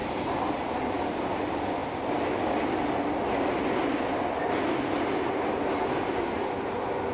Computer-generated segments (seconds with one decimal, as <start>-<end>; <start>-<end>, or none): 0.0-0.9